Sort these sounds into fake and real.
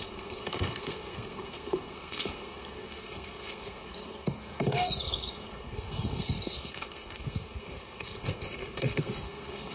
fake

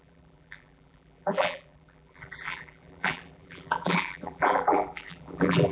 fake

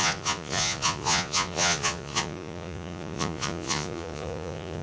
fake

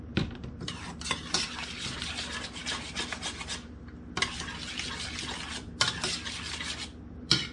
real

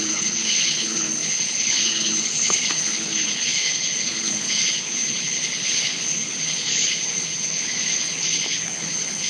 fake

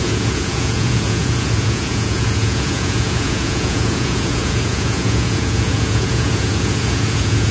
fake